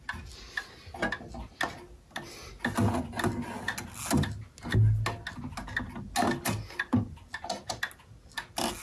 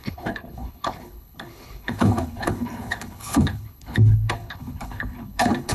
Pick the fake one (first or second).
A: second